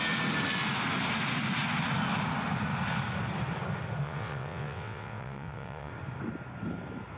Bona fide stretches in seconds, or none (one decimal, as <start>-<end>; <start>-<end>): 0.0-4.0; 5.9-7.2